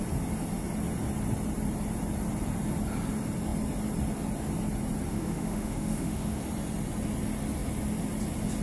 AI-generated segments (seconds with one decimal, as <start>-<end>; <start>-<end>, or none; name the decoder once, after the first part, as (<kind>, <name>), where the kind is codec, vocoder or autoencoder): 5.1-6.4 (autoencoder, DAC-VAE)